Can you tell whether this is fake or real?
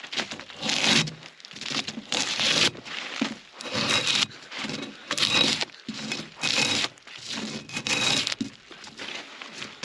real